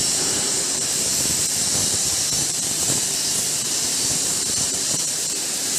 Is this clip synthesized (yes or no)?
yes